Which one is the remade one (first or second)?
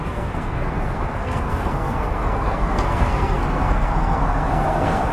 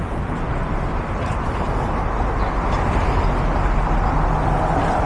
first